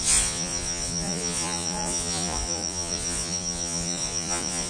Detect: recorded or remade remade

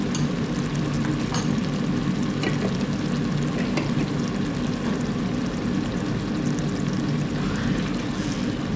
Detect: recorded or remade recorded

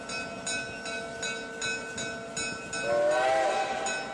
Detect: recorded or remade recorded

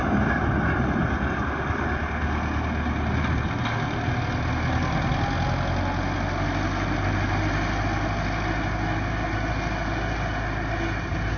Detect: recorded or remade recorded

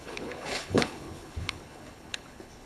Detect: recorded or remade remade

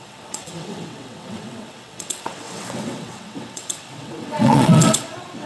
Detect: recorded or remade remade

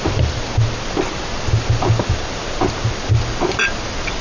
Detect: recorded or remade recorded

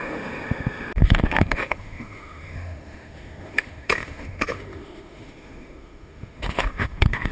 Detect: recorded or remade remade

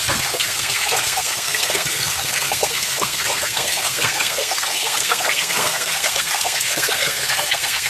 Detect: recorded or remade remade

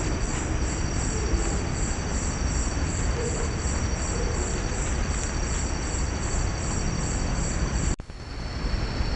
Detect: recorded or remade recorded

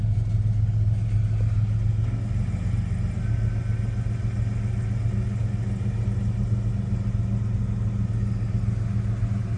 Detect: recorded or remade recorded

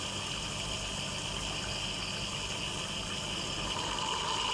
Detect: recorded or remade recorded